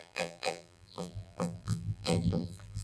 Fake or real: fake